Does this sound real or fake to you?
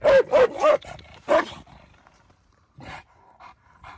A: fake